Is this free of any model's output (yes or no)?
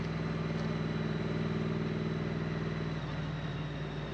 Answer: yes